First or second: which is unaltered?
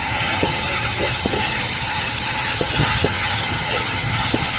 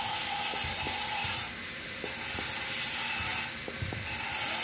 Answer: second